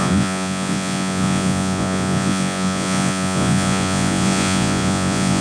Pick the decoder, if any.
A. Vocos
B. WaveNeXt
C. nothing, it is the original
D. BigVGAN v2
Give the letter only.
A